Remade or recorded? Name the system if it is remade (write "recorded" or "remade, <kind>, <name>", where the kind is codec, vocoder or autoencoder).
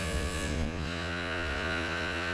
remade, vocoder, Vocos